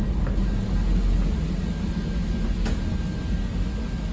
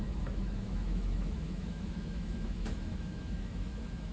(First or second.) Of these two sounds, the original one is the first